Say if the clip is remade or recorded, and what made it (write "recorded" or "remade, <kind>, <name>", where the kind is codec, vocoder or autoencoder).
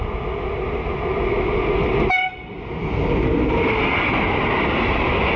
recorded